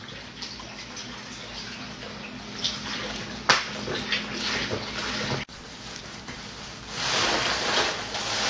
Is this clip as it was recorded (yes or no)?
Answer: yes